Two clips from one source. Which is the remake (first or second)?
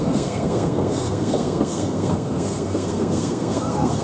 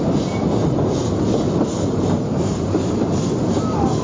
first